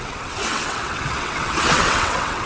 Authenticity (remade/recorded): remade